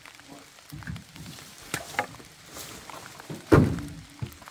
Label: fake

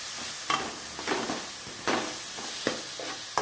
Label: real